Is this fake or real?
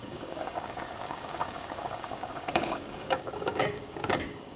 fake